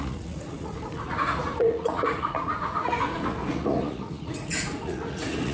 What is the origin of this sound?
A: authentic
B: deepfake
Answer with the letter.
B